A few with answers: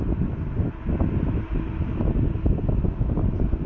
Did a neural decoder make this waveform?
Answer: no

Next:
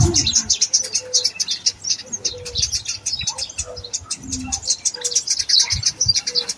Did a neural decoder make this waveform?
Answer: no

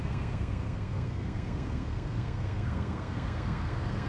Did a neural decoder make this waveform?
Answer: yes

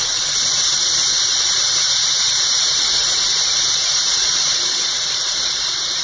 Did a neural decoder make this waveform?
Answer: yes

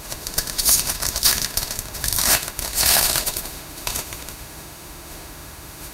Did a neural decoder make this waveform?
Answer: yes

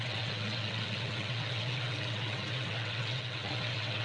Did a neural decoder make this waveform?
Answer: yes